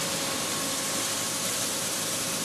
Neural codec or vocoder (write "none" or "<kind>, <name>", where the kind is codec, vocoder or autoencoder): none